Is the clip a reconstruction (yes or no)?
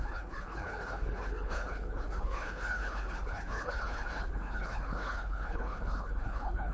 yes